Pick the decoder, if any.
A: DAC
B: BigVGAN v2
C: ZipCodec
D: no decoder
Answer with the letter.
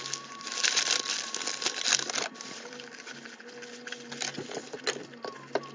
D